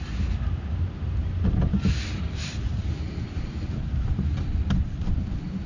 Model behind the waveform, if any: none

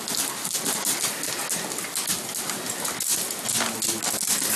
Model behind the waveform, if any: none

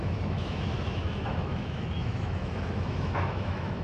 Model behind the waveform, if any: autoencoder, DAC-VAE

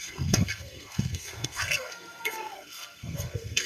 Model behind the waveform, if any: codec, SNAC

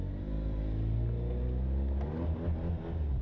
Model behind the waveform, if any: none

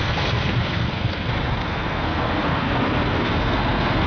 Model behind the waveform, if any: codec, SNAC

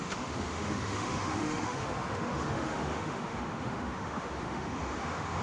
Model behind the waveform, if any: autoencoder, DAC-VAE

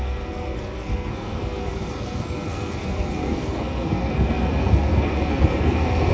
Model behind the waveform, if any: codec, SNAC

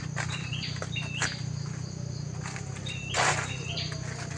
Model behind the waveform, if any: none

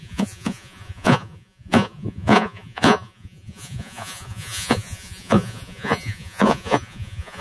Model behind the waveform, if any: vocoder, Vocos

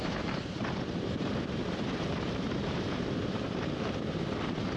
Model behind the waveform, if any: vocoder, BigVGAN v2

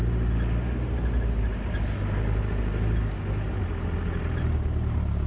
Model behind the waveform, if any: none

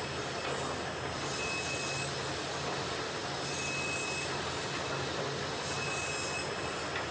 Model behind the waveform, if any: none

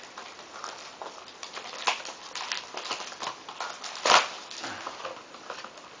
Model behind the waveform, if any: none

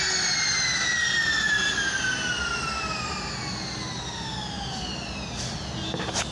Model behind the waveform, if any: none